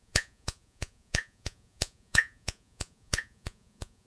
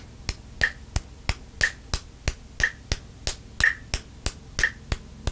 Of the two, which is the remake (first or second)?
first